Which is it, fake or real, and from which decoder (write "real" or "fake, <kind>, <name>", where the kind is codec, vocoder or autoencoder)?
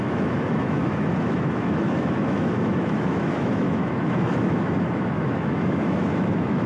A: fake, autoencoder, DAC-VAE